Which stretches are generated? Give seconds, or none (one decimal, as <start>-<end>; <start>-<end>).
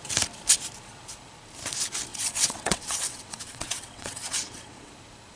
2.1-4.9